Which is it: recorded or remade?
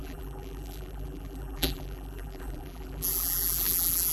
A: remade